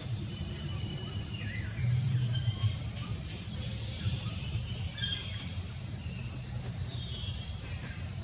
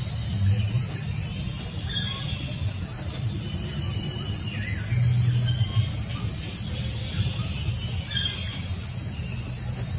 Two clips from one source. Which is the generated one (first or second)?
first